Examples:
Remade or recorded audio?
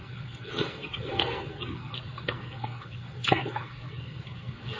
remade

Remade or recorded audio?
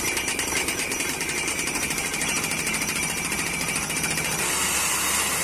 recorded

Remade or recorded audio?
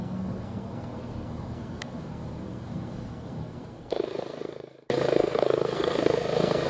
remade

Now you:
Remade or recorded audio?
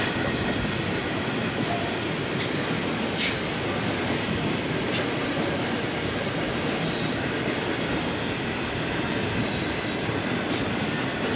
recorded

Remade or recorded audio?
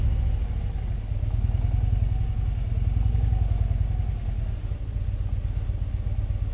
recorded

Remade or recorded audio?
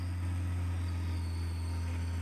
recorded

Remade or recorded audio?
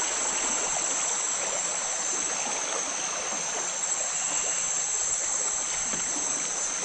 recorded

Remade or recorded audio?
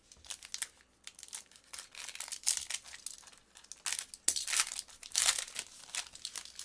recorded